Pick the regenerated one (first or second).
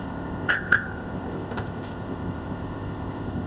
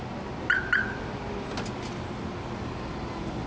first